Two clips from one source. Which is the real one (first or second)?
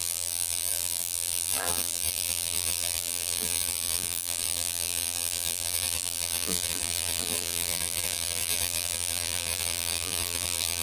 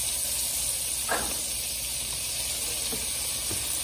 second